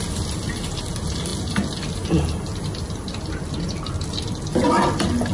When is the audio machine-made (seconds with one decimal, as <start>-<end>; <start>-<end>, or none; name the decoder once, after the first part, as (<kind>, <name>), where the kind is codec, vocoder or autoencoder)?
none